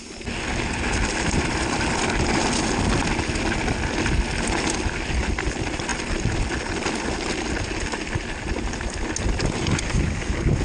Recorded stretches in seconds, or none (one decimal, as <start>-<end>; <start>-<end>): 0.0-10.6